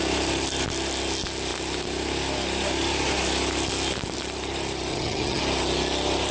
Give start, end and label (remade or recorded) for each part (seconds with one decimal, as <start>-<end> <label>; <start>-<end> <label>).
0.0-4.9 recorded; 4.9-5.4 remade; 5.4-6.3 recorded

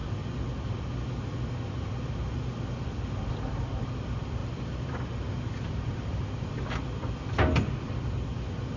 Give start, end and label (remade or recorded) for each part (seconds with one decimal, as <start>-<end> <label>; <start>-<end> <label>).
0.0-4.4 recorded; 4.4-6.6 remade; 6.6-8.8 recorded

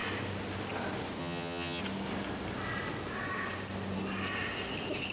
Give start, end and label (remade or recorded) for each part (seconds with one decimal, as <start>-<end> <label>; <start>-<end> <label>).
0.0-1.2 recorded; 1.2-1.8 remade; 1.8-5.1 recorded